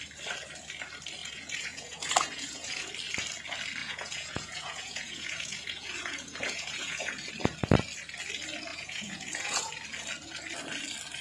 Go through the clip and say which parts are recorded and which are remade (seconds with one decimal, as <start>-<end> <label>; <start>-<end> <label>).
0.0-1.2 recorded; 1.2-2.9 remade; 2.9-3.8 recorded; 3.8-7.3 remade; 7.3-8.7 recorded; 8.7-9.7 remade; 9.7-11.2 recorded